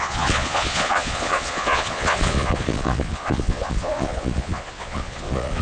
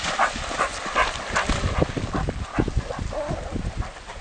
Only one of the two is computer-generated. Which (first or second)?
first